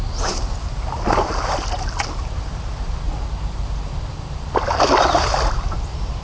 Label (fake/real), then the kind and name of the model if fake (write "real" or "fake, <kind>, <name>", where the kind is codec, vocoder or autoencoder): real